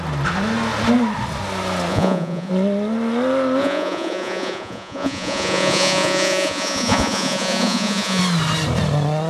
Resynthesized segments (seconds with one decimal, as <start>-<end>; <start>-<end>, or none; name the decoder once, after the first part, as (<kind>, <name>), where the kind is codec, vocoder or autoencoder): 1.9-2.5 (vocoder, Vocos); 3.6-8.2